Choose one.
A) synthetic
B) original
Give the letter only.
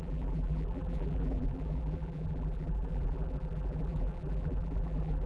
A